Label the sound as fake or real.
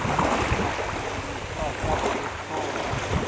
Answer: real